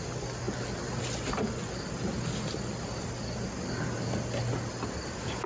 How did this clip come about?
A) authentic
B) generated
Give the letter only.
A